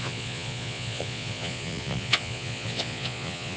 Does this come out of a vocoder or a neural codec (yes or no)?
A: yes